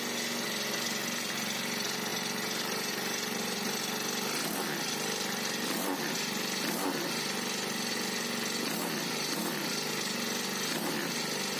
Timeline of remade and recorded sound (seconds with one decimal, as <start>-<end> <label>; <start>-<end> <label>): 0.0-2.1 recorded; 2.1-3.8 remade; 3.8-11.6 recorded